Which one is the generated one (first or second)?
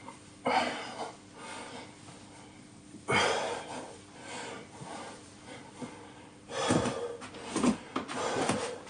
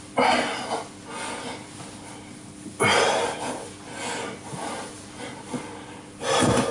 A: first